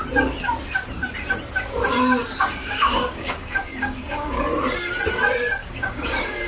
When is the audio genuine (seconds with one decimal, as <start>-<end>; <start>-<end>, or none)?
0.0-2.6; 4.4-5.6